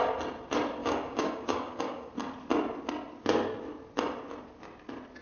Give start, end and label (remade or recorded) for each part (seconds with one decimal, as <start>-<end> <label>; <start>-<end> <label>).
0.0-0.8 recorded; 0.8-2.1 remade; 2.1-5.2 recorded